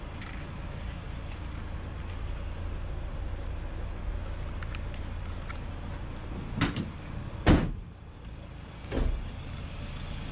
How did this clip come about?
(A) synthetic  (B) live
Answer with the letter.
B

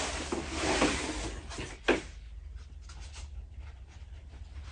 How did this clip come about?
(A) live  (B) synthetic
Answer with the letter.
A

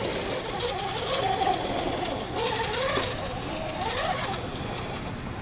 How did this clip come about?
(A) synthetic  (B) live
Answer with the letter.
B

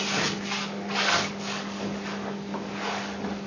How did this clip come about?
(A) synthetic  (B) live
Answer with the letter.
A